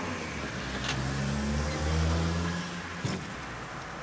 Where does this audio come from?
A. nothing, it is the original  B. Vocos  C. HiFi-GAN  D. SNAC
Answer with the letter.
A